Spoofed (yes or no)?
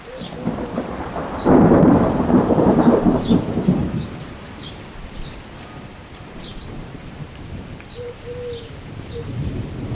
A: yes